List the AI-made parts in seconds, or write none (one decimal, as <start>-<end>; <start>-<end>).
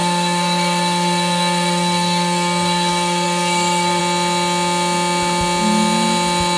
0.0-4.0